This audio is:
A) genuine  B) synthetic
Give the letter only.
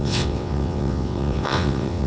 B